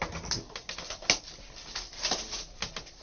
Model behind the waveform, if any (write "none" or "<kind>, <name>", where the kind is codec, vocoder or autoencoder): none